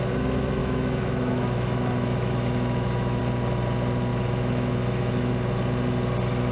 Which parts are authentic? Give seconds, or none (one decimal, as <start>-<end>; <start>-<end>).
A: 0.0-0.6; 3.2-4.1; 5.3-6.5